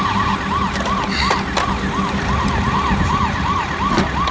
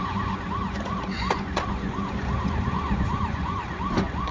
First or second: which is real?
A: first